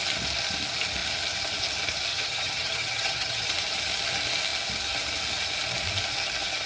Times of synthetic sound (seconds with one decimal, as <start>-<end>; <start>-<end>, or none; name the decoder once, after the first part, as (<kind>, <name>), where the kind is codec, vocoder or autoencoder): 2.1-3.5 (vocoder, HiFi-GAN)